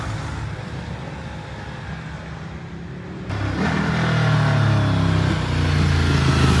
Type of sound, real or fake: real